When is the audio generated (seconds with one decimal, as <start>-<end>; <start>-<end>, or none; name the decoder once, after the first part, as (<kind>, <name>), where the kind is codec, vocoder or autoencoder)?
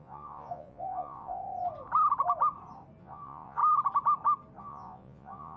0.0-1.4 (vocoder, Vocos); 3.0-3.6; 4.6-5.6